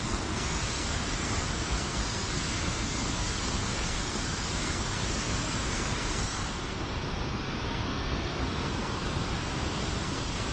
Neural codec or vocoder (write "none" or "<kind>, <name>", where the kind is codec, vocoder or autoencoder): codec, SNAC